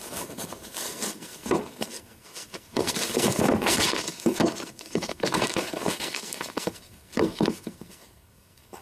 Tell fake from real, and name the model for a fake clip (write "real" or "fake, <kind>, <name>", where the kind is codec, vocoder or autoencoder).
fake, codec, SNAC